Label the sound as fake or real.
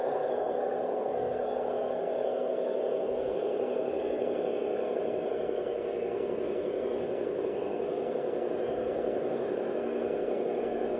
fake